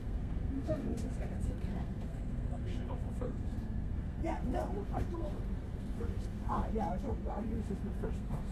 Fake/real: fake